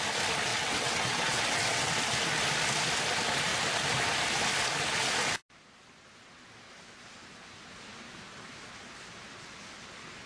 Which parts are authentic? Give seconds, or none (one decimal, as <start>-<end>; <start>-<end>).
0.0-0.5; 1.9-10.3